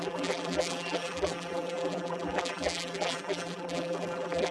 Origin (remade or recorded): remade